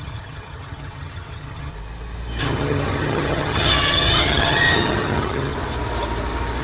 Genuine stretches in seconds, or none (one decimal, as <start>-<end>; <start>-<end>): 1.7-2.4; 5.5-6.6